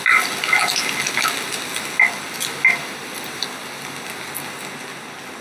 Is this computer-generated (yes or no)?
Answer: no